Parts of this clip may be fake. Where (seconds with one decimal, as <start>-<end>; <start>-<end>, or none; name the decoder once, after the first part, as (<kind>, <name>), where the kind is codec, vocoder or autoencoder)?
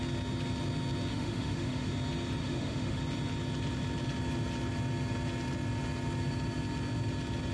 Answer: 1.1-1.9 (autoencoder, DAC-VAE); 2.4-3.0